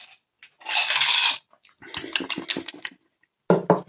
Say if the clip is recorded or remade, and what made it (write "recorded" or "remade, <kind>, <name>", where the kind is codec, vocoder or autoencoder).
recorded